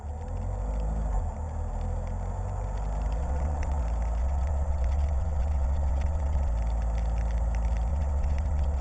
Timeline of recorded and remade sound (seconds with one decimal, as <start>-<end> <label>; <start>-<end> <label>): 0.0-3.2 recorded; 3.2-3.8 remade; 3.8-4.2 recorded; 4.2-6.5 remade; 6.5-7.9 recorded; 7.9-8.8 remade